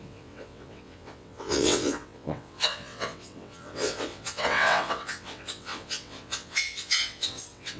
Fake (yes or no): yes